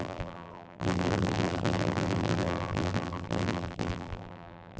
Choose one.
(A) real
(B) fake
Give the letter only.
B